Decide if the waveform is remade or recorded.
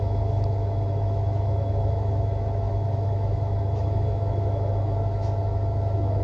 remade